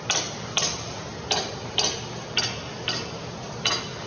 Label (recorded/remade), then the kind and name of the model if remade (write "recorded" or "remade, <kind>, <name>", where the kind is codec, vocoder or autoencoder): recorded